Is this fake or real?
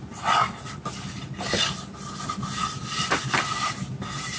real